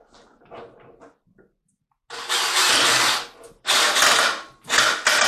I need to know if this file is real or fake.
real